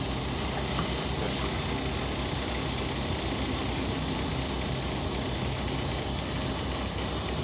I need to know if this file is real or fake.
real